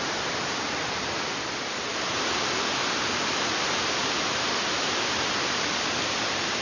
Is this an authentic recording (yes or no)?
no